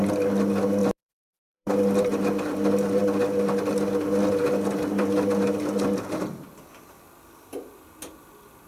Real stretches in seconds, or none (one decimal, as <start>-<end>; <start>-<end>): 0.0-0.8; 1.7-8.7